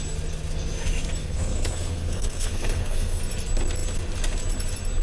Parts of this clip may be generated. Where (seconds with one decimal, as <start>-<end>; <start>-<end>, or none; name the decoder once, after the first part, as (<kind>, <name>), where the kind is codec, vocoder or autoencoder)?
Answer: 1.2-3.2 (codec, SNAC)